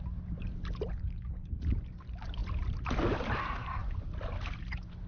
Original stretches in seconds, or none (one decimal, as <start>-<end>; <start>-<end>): 0.0-0.9; 1.6-5.1